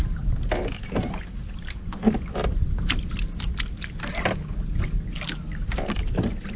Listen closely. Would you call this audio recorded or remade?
recorded